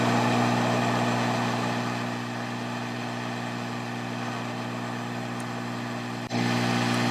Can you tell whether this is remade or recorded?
recorded